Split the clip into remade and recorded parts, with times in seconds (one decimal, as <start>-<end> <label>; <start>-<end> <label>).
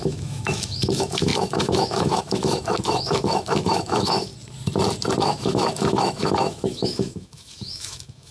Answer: 0.0-4.3 remade; 4.3-5.2 recorded; 5.2-8.3 remade